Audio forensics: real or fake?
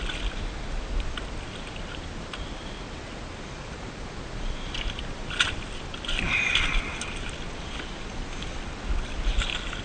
real